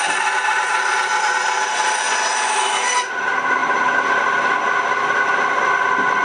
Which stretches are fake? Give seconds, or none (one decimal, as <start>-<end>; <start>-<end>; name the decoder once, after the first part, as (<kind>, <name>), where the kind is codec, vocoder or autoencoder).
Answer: none